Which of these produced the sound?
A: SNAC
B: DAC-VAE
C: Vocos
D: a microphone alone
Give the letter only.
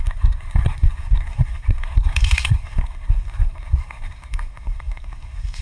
A